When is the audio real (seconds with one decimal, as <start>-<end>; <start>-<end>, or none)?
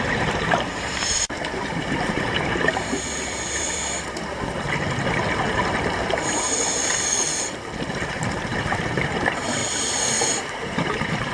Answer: 6.8-7.9; 9.6-10.4